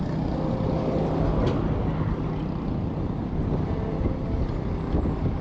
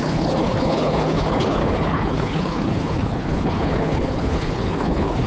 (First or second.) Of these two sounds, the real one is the first